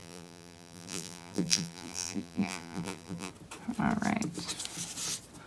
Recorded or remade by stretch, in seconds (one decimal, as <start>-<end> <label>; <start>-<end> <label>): 0.0-3.3 remade; 3.3-5.5 recorded